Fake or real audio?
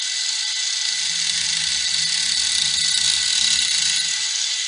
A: real